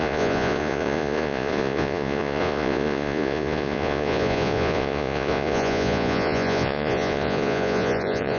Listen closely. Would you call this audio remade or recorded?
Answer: remade